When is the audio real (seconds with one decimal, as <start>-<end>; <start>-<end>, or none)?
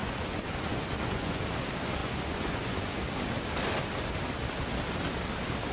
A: 1.4-2.0; 3.0-5.7